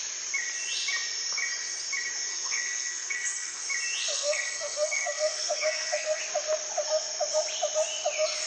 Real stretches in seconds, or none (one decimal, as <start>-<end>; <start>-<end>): 0.0-2.3; 3.6-4.0; 6.2-8.5